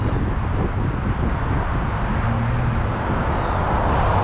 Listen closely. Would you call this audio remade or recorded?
recorded